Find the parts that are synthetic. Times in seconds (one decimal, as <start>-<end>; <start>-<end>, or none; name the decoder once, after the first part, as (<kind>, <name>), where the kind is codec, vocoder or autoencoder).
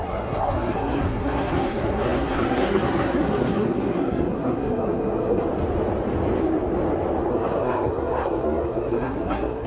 0.0-5.5 (codec, SNAC); 7.3-9.7